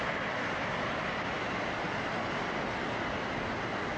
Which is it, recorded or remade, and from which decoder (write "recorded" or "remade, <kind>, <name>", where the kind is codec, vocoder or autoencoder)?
recorded